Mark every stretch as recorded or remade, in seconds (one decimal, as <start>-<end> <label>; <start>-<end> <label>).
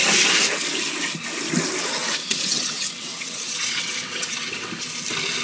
0.0-2.0 recorded; 2.0-4.7 remade; 4.7-5.4 recorded